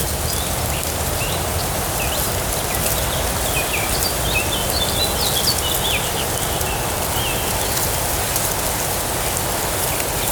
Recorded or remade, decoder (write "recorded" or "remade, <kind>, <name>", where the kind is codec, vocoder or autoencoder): recorded